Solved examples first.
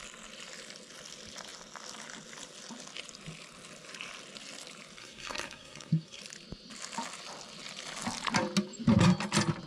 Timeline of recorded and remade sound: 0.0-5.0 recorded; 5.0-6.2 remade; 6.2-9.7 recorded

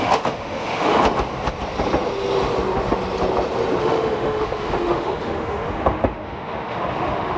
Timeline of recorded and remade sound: 0.0-0.9 remade; 0.9-3.8 recorded; 3.8-7.4 remade

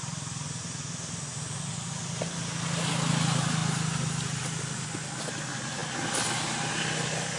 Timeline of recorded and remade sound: 0.0-7.4 recorded

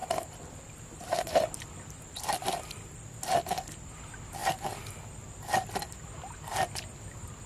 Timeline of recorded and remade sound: 0.0-3.2 remade; 3.2-7.5 recorded

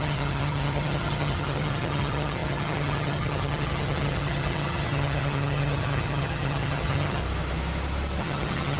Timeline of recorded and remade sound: 0.0-7.2 remade; 7.2-8.2 recorded; 8.2-8.8 remade

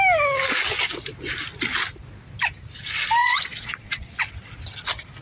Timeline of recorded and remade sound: 0.0-3.2 recorded; 3.2-4.3 remade; 4.3-5.2 recorded

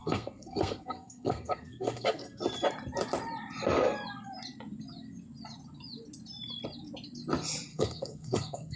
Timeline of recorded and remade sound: 0.0-2.4 remade; 2.4-7.7 recorded; 7.7-8.8 remade